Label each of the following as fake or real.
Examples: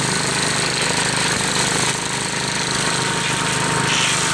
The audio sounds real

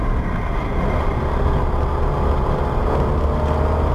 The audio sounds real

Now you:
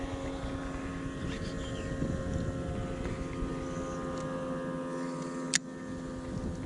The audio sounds real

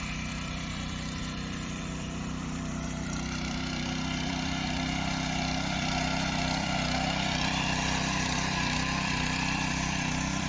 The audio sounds fake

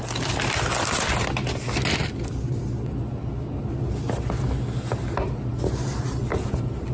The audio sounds real